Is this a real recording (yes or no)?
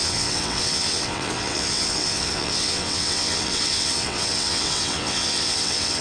no